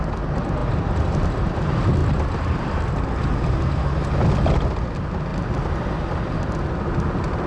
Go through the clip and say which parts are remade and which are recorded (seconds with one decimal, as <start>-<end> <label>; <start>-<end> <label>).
0.0-7.5 recorded

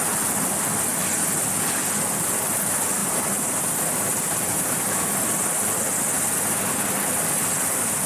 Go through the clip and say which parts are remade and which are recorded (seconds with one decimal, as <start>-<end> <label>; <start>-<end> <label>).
0.0-3.0 recorded; 3.0-4.9 remade; 4.9-8.1 recorded

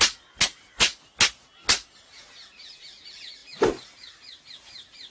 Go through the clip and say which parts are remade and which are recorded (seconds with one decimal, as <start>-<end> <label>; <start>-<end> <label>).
0.0-5.1 recorded

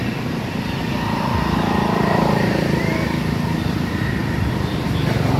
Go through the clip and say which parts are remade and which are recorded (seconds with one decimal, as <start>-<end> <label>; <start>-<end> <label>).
0.0-5.4 remade